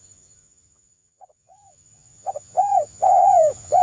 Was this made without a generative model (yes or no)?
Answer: no